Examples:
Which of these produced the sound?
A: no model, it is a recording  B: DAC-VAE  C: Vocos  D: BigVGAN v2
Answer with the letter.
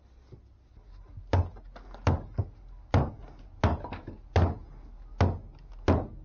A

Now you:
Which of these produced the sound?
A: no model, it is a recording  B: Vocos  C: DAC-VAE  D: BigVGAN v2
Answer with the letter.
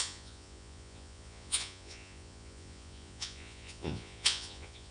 B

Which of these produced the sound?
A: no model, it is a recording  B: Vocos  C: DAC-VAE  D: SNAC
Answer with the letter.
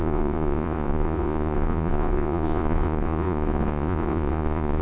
B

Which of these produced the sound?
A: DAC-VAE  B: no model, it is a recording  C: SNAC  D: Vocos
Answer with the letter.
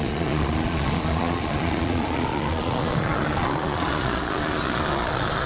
D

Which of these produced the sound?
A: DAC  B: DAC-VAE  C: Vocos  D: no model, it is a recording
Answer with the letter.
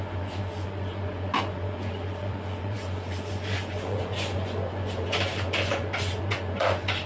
C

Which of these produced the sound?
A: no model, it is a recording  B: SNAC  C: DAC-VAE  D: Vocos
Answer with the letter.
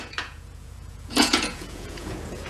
D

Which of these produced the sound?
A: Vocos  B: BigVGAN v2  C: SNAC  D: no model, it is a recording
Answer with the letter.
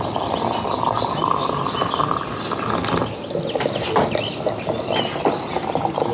D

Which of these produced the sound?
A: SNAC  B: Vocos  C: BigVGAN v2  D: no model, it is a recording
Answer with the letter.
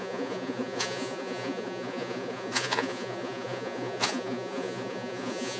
B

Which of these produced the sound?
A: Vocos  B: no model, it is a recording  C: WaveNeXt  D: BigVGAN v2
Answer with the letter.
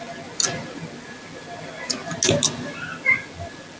B